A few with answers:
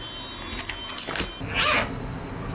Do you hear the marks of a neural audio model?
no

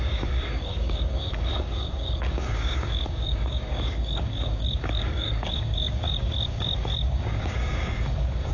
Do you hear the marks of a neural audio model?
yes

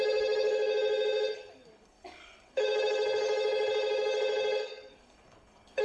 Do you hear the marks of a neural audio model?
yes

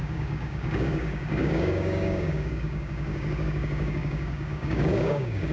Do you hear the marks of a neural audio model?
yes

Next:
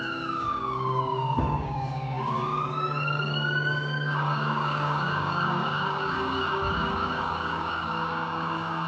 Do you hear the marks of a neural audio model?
yes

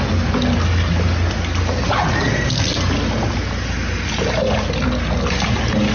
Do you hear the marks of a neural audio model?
no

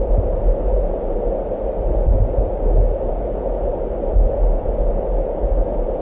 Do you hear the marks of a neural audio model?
no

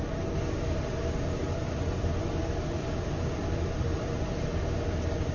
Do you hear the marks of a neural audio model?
no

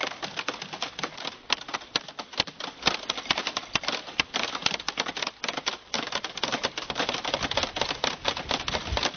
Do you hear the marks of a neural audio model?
no